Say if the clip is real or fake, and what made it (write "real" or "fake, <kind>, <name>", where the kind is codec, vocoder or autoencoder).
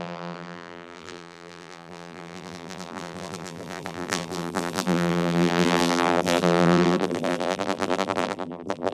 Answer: fake, vocoder, BigVGAN v2